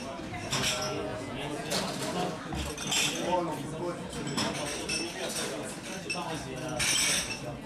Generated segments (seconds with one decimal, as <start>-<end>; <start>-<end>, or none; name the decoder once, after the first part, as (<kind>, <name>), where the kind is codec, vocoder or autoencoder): 1.1-1.8 (vocoder, Vocos)